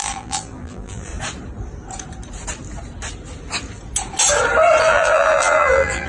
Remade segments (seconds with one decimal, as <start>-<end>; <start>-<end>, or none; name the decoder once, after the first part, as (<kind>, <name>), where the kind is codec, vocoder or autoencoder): 0.0-1.1 (vocoder, BigVGAN v2); 4.8-6.1